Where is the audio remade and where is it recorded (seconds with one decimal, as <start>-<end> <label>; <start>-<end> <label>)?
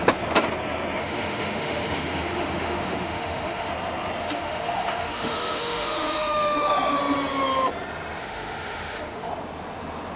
0.0-1.0 recorded; 1.0-3.7 remade; 3.7-4.2 recorded; 4.2-7.0 remade; 7.0-8.2 recorded; 8.2-9.3 remade; 9.3-10.2 recorded